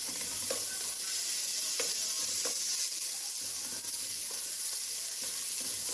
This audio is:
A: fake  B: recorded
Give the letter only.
B